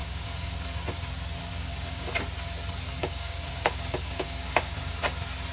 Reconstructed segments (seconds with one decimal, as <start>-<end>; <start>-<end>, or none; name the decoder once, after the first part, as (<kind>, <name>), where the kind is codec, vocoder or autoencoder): 0.0-0.5 (codec, DAC); 1.4-2.1; 3.0-4.9